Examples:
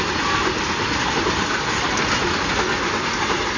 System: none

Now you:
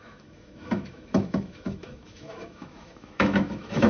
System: autoencoder, DAC-VAE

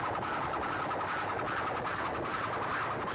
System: none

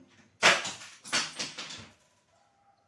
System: none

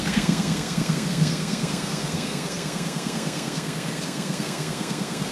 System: codec, SNAC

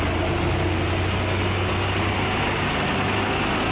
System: none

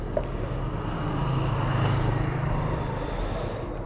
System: none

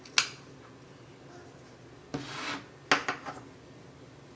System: none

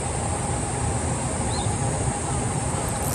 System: none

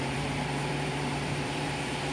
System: vocoder, BigVGAN v2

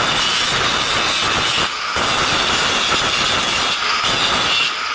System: none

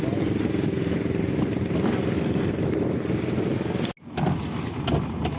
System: none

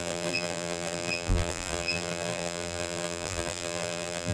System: vocoder, BigVGAN v2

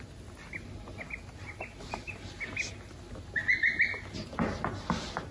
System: none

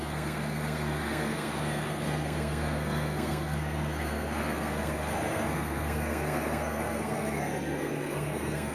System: codec, SNAC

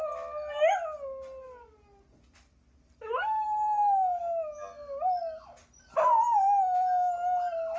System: none